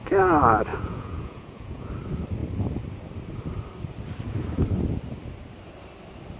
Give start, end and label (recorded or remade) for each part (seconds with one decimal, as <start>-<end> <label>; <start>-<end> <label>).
0.0-0.7 recorded; 0.7-1.9 remade; 1.9-6.4 recorded

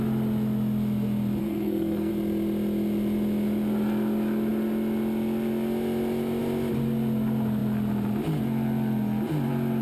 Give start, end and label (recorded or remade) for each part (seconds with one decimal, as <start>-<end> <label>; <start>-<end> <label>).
0.0-1.4 recorded; 1.4-2.1 remade; 2.1-9.8 recorded

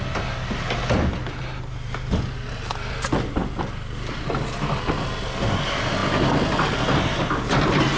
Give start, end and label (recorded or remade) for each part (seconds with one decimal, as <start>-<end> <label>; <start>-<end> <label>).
0.0-8.0 recorded